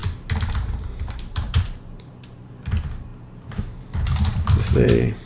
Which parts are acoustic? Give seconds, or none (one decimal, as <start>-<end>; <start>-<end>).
0.0-1.3; 2.5-5.3

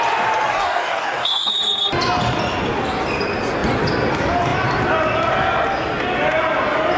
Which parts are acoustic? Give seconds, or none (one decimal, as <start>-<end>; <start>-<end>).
0.0-0.5; 1.5-7.0

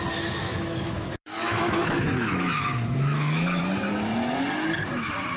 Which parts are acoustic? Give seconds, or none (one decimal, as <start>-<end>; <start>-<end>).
0.0-0.4; 3.6-5.4

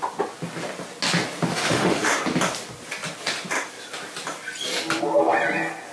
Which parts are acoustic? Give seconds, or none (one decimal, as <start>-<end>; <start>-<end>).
0.0-1.5; 2.1-5.9

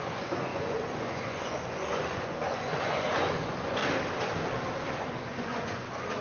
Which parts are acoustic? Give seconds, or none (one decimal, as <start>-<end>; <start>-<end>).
3.8-5.0

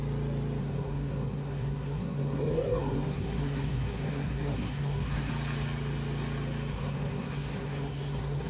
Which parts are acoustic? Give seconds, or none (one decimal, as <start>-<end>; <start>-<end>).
0.0-0.6; 5.3-6.7

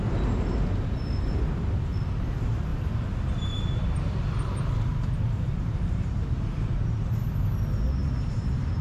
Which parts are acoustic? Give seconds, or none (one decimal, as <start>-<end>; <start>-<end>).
0.0-2.7; 7.1-8.0

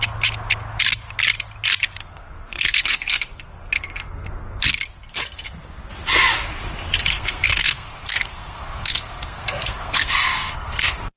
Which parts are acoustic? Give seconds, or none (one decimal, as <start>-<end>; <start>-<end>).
0.0-2.0; 4.6-7.1